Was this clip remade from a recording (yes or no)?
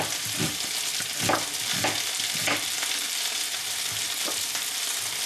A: no